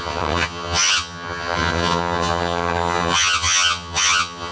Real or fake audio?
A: fake